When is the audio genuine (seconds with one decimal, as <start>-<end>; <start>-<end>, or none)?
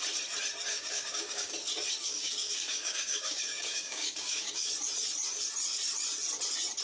0.0-0.7; 1.5-2.0; 4.7-6.8